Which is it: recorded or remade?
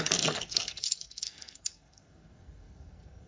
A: remade